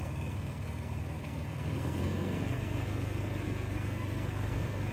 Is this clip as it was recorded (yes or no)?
no